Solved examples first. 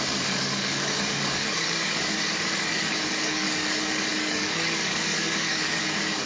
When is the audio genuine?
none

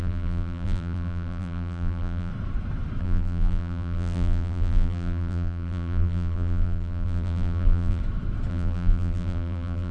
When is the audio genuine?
2.3-3.0; 8.0-8.5

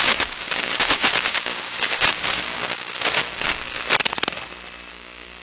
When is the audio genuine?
3.8-4.9

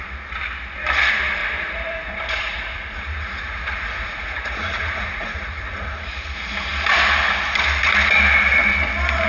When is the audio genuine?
0.0-1.4; 6.1-9.3